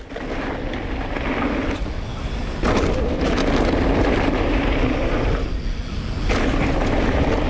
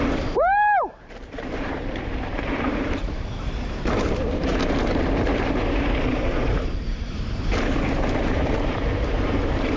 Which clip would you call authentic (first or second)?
first